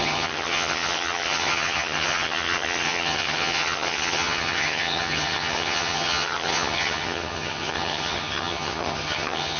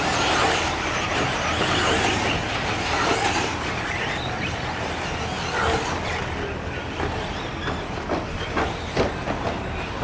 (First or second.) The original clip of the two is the second